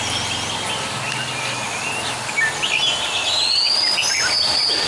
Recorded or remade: recorded